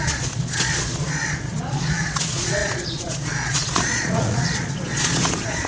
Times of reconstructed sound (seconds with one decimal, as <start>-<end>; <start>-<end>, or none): 0.0-5.7